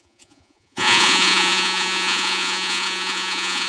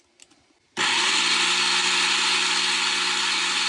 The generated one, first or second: first